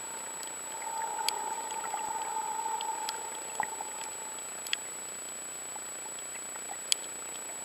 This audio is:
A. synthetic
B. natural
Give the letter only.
B